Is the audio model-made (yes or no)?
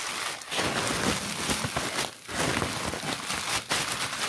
no